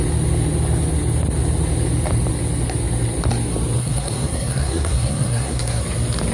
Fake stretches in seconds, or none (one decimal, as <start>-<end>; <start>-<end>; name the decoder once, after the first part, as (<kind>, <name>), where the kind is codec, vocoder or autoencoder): 3.8-5.8 (codec, SNAC)